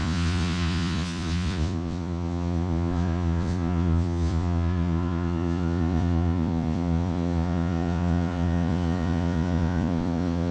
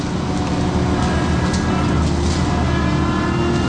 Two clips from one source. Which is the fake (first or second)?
first